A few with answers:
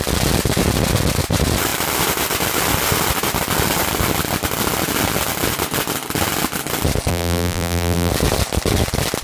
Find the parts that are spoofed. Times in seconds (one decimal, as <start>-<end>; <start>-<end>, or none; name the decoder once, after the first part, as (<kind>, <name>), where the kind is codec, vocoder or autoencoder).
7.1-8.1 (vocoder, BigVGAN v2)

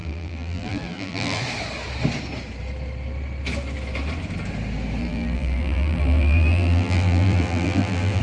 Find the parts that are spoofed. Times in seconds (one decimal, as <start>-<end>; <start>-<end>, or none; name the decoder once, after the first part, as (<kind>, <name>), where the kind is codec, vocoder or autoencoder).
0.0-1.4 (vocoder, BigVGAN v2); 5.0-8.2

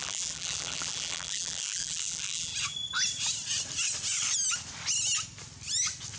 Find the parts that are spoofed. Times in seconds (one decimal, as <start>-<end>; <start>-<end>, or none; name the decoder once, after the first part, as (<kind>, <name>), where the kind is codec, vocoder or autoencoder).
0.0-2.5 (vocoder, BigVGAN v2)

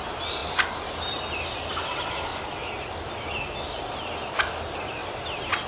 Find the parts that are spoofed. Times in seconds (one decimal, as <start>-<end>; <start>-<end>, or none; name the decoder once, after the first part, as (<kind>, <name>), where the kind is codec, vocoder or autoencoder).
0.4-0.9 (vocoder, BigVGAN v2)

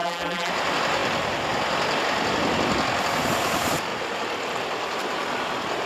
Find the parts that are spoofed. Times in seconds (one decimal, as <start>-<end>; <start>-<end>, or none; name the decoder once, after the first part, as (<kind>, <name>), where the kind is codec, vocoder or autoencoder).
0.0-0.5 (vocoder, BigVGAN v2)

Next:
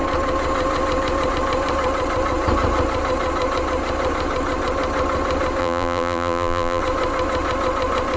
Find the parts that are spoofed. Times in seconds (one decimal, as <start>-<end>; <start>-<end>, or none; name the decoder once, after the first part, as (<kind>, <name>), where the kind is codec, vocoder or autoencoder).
5.6-6.8 (vocoder, BigVGAN v2)

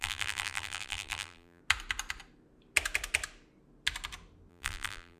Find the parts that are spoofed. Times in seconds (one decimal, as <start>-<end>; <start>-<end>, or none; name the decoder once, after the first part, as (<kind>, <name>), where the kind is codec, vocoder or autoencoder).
0.0-1.6 (vocoder, BigVGAN v2); 4.5-5.2